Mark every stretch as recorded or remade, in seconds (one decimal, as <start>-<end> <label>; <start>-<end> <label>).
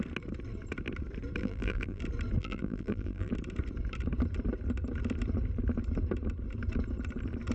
0.0-1.4 recorded; 1.4-2.0 remade; 2.0-2.4 recorded; 2.4-3.3 remade; 3.3-7.5 recorded